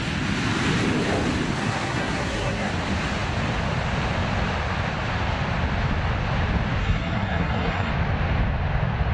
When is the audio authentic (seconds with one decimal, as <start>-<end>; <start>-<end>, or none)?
0.0-1.6; 2.7-6.8; 7.9-9.1